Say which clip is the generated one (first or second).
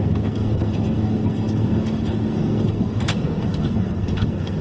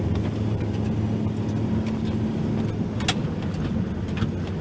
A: first